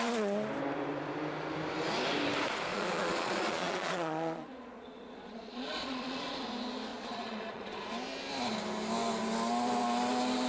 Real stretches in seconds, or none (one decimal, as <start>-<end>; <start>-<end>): 0.0-2.7; 6.4-6.9; 7.8-10.5